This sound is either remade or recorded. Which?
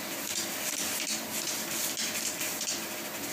recorded